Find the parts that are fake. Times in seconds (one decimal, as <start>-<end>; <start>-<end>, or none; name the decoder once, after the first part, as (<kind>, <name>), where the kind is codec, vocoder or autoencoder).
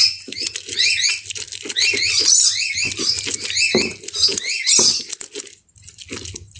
none